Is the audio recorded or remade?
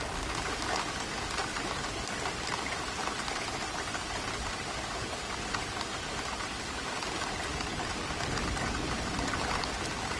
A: recorded